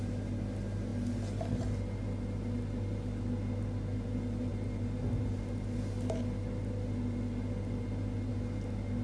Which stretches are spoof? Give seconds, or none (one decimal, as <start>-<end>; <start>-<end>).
none